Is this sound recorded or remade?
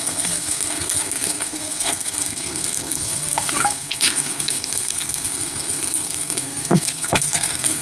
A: remade